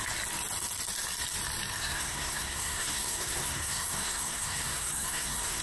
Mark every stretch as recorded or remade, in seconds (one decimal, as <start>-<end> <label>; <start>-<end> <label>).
0.0-1.8 recorded; 1.8-5.6 remade